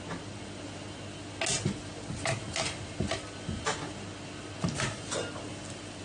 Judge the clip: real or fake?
real